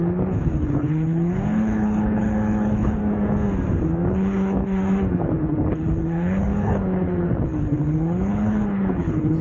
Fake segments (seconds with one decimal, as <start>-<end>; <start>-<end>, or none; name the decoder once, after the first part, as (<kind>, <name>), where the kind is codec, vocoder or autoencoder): 0.0-3.0 (codec, HILCodec); 4.1-9.4